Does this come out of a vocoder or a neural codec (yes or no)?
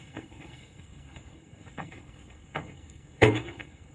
yes